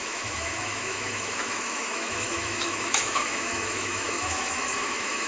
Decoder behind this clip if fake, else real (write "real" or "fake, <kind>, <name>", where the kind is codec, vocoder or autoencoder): fake, autoencoder, DAC-VAE